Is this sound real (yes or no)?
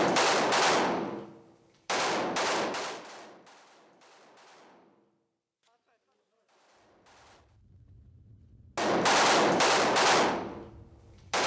yes